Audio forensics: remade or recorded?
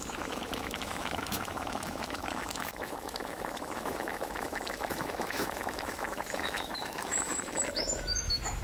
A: remade